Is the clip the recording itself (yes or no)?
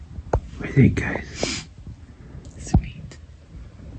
yes